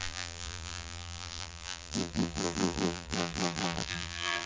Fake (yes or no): yes